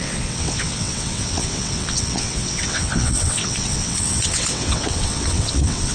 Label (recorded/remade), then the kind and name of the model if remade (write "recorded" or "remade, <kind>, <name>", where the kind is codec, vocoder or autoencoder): remade, vocoder, WaveNeXt